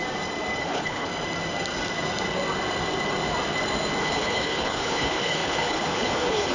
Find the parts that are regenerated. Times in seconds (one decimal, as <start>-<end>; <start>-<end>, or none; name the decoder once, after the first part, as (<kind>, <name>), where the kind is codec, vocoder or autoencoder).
0.6-1.1 (codec, HILCodec); 4.0-6.5